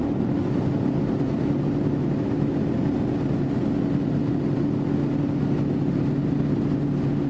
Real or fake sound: real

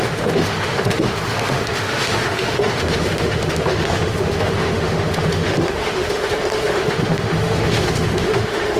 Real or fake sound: fake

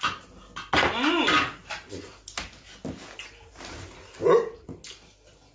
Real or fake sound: real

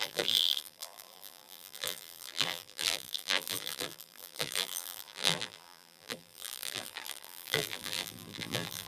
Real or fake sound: fake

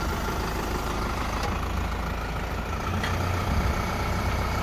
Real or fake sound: real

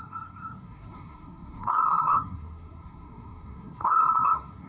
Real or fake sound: fake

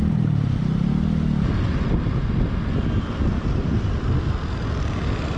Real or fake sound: real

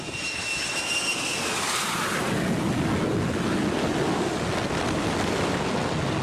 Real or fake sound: real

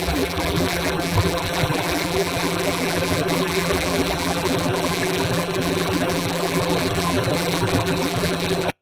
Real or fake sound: fake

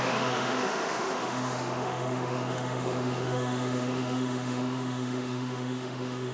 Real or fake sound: fake